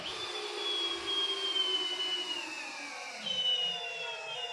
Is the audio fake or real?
real